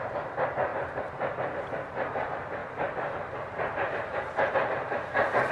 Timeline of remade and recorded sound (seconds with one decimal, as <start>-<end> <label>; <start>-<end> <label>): 0.0-0.7 recorded; 0.7-1.7 remade; 1.7-2.6 recorded; 2.6-4.5 remade; 4.5-5.5 recorded

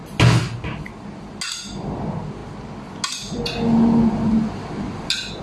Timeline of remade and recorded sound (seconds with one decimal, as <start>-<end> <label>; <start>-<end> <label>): 0.0-5.4 recorded

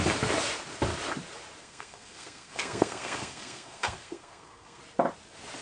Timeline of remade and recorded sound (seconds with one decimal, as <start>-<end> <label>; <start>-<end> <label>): 0.0-1.6 recorded; 1.6-4.8 remade; 4.8-5.6 recorded

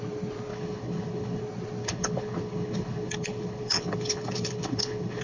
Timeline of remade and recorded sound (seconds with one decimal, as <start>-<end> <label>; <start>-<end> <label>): 0.0-0.5 recorded; 0.5-1.4 remade; 1.4-1.8 recorded; 1.8-5.2 remade

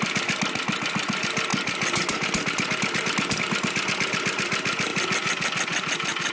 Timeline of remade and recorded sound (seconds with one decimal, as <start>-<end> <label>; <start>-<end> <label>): 0.0-6.3 recorded